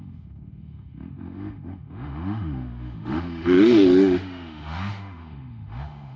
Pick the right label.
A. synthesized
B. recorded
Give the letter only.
A